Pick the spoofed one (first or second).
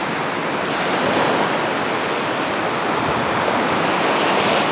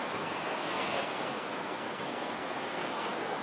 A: second